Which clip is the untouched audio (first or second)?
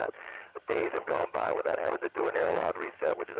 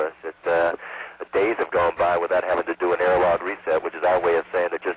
second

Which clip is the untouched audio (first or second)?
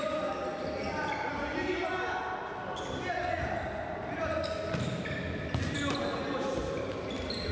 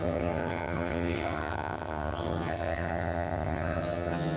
first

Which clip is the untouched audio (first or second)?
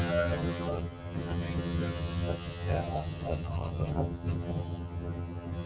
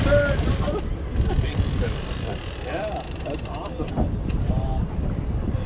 second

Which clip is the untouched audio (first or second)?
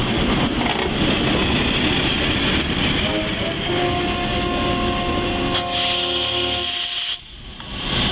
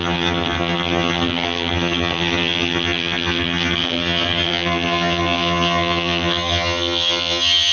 first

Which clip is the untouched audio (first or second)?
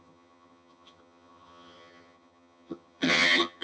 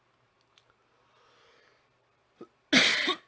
second